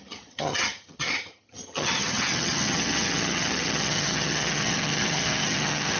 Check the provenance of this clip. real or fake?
fake